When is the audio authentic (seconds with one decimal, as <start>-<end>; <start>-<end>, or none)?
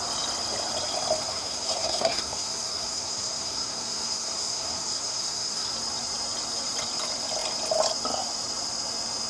0.0-1.3; 5.7-9.3